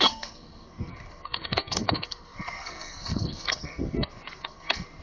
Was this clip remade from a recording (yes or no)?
yes